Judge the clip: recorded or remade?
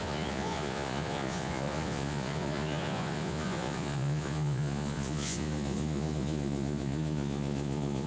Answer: remade